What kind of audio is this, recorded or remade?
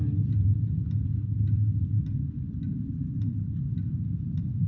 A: recorded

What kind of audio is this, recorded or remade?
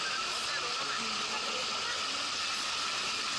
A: recorded